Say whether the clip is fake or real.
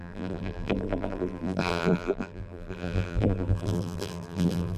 fake